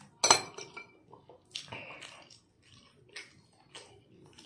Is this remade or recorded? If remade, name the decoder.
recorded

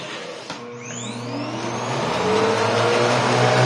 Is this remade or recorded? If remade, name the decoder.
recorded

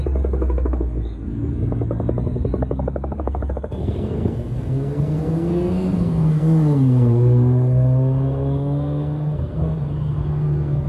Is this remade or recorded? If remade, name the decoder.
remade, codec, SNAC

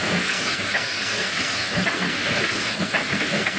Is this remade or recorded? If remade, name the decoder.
remade, codec, SNAC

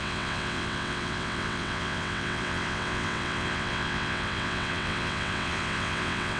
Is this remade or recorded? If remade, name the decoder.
remade, vocoder, WaveNeXt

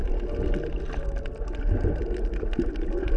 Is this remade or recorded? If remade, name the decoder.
remade, vocoder, BigVGAN v2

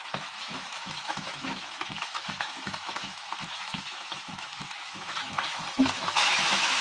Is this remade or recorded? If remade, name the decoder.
remade, autoencoder, DAC-VAE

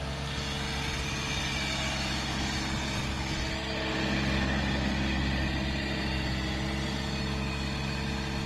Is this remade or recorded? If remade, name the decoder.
recorded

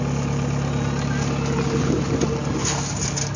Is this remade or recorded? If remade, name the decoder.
recorded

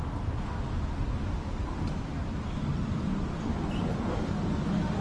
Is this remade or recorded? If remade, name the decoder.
recorded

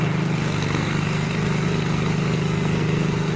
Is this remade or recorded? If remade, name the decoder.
remade, codec, SNAC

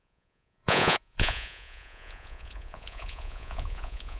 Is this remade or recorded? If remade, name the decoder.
remade, vocoder, Vocos